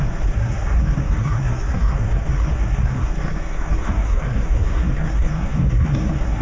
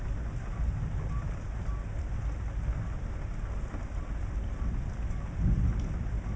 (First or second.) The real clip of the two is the second